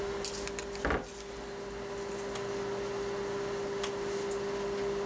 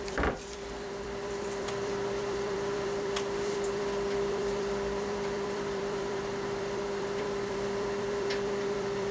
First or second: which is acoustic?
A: first